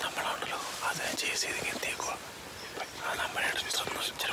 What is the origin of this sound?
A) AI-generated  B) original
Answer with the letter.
B